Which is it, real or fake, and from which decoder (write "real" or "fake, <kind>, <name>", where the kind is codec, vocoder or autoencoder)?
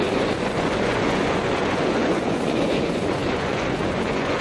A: fake, vocoder, Vocos